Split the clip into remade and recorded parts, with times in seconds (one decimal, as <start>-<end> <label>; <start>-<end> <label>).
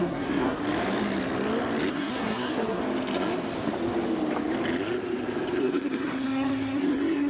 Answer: 0.0-0.6 remade; 0.6-1.9 recorded; 1.9-2.8 remade; 2.8-5.6 recorded; 5.6-7.3 remade